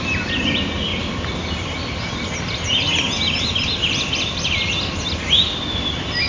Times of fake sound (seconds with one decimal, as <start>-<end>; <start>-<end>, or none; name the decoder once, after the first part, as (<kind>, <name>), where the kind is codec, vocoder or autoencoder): none